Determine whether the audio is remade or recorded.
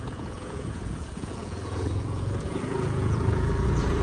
remade